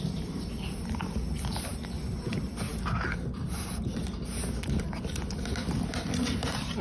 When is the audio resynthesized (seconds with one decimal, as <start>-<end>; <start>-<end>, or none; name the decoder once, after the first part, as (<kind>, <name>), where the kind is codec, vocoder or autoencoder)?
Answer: 0.0-2.7 (vocoder, BigVGAN v2); 4.9-6.8